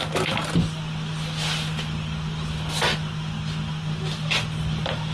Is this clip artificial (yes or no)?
no